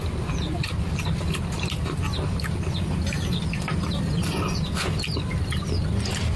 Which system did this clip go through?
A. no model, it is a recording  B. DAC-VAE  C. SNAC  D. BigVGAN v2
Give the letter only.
A